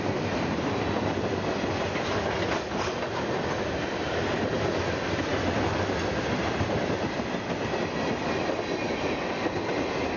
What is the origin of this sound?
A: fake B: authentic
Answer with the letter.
B